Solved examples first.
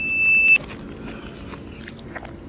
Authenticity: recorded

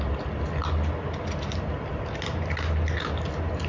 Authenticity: recorded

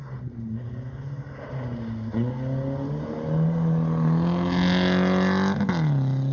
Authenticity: recorded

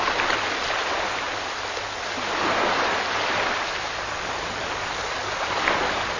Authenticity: recorded